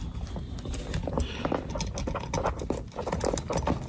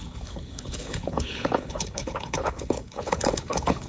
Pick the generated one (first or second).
second